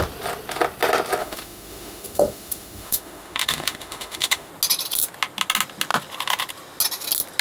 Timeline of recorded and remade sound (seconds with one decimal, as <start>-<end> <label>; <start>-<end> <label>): 0.0-1.2 recorded; 1.2-4.5 remade; 4.5-7.4 recorded